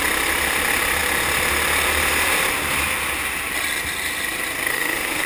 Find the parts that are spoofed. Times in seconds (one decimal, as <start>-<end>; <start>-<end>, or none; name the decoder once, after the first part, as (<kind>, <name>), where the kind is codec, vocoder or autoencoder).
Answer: 4.7-5.3 (autoencoder, DAC-VAE)